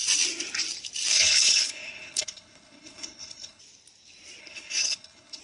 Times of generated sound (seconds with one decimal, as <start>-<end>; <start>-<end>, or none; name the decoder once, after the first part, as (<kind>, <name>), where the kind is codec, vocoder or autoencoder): 1.1-3.6 (codec, HILCodec); 4.4-5.4